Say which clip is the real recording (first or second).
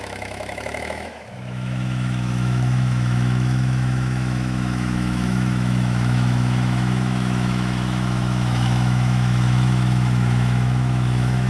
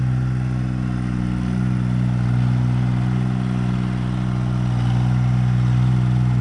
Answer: second